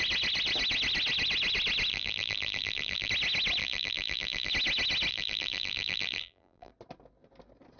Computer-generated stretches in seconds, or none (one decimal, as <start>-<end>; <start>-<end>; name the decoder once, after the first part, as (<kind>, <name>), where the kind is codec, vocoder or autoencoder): 1.9-3.1 (vocoder, BigVGAN v2); 3.6-4.5; 5.1-6.7